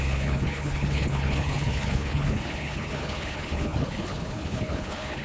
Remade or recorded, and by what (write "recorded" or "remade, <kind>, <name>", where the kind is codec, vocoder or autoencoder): remade, codec, HILCodec